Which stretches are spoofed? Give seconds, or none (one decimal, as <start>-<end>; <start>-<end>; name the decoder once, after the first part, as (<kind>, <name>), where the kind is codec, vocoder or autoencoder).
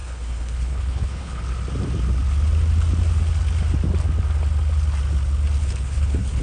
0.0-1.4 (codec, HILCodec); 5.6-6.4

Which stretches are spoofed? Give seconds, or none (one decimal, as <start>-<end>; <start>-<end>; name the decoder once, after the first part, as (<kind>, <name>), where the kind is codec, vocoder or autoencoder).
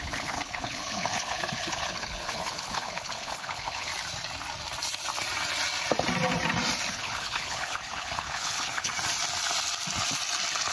0.0-3.9 (codec, HILCodec); 6.9-8.9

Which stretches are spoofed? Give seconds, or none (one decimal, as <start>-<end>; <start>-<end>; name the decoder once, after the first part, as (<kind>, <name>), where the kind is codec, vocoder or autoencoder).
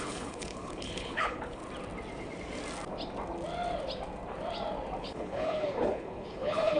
0.0-1.6 (codec, HILCodec); 5.0-6.8